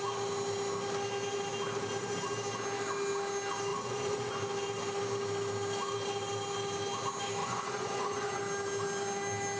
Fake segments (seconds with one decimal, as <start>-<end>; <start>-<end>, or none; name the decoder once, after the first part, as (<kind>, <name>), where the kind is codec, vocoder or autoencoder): 3.7-4.3 (vocoder, Vocos); 7.4-8.4